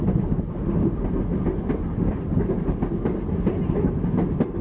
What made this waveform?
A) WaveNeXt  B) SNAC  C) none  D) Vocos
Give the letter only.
C